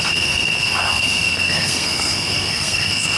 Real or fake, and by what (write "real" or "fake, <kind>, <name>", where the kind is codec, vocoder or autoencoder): fake, codec, SNAC